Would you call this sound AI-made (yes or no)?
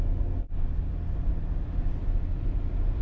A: no